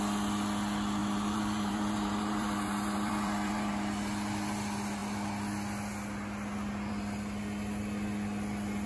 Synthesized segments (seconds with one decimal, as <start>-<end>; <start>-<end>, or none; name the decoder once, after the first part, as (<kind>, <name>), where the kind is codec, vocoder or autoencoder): 1.0-3.7 (vocoder, BigVGAN v2)